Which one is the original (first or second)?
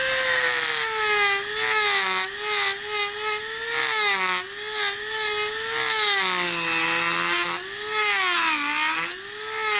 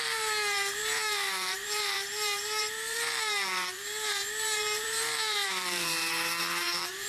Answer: first